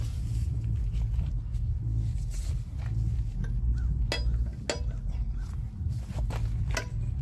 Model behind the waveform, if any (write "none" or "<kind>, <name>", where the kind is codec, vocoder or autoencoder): none